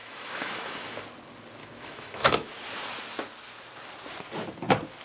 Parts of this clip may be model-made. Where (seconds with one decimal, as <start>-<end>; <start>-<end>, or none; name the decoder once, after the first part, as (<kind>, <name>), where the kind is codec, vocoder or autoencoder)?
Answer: 0.0-1.0 (autoencoder, DAC-VAE); 1.6-2.5